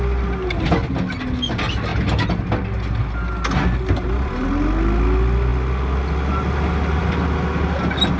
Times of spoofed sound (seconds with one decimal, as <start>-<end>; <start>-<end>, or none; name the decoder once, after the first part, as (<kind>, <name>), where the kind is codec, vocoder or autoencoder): none

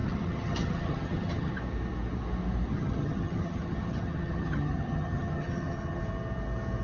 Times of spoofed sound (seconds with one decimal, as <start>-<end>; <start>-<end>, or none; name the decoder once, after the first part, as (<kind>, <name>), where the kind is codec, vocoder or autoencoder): 0.0-1.5 (vocoder, HiFi-GAN); 2.7-6.0

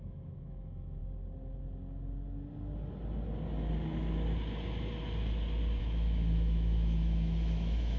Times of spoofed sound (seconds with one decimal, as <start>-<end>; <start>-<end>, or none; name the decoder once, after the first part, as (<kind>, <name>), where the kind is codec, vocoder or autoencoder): 0.0-1.0 (autoencoder, DAC-VAE); 5.8-8.0

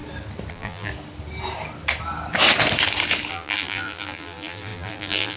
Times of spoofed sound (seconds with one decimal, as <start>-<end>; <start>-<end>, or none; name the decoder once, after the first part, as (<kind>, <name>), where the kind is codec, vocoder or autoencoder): 0.5-0.9 (vocoder, BigVGAN v2); 3.3-5.4

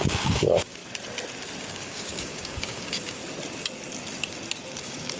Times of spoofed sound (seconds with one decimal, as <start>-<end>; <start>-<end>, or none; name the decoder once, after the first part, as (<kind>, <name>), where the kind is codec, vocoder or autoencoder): 0.0-0.8 (codec, DAC); 1.6-3.2; 4.8-5.2

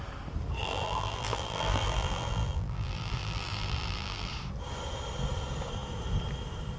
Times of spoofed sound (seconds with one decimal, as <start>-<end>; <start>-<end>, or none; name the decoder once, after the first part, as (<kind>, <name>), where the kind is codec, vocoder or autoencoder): 0.6-4.3 (vocoder, BigVGAN v2)

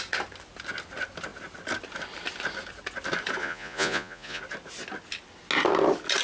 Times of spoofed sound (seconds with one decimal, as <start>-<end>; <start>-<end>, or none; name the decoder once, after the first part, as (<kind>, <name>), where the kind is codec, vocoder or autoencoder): 3.4-4.4 (vocoder, Vocos)